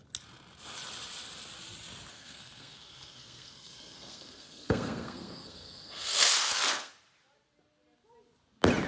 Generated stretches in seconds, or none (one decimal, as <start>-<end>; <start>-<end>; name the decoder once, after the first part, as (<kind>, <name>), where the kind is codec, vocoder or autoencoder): 2.1-6.9 (codec, SNAC)